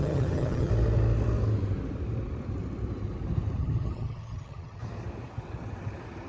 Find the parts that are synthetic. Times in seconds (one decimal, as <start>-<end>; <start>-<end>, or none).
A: 0.0-0.7; 3.6-4.8